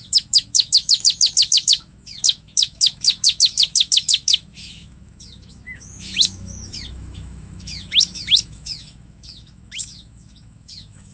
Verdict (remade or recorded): remade